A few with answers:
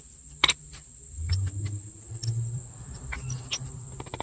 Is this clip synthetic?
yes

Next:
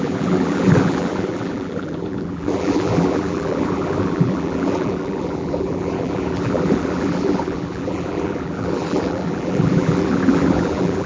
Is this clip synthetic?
yes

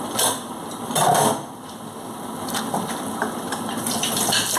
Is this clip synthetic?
no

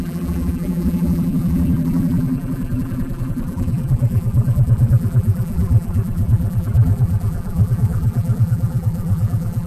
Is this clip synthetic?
yes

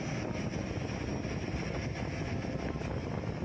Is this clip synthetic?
yes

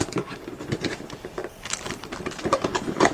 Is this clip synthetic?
yes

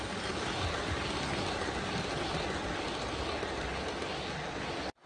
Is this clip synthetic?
no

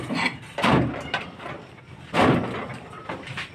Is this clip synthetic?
yes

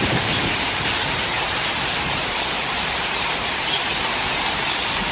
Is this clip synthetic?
yes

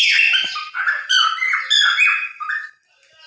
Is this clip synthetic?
no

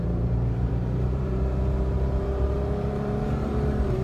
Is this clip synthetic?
yes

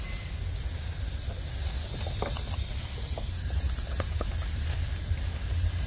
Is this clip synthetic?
no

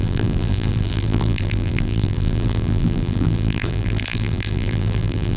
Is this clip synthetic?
yes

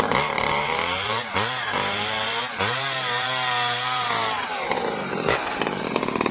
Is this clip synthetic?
yes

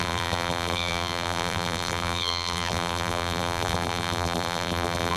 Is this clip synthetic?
yes